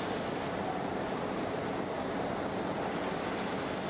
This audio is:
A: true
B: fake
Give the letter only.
A